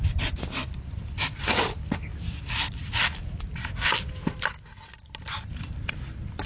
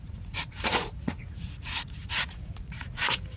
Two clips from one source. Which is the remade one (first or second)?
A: second